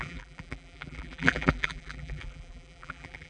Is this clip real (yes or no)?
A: no